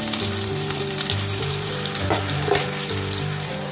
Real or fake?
fake